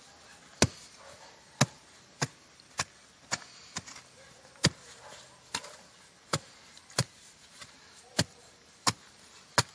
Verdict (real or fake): real